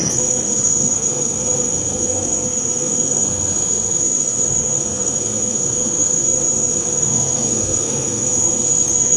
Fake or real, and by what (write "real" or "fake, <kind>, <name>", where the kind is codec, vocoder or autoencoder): fake, codec, SNAC